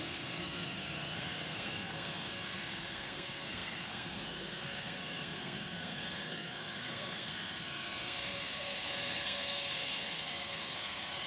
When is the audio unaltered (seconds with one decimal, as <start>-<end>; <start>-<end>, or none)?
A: none

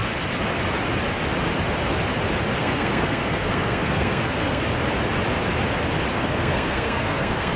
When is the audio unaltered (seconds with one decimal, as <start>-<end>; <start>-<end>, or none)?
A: 0.0-2.6; 4.7-6.1